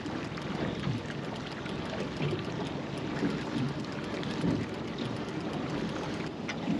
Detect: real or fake real